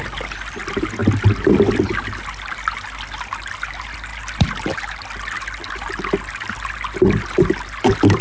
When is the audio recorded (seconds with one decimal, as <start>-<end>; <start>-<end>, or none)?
0.0-8.2